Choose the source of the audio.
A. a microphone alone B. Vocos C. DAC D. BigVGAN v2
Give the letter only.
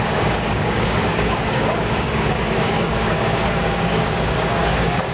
C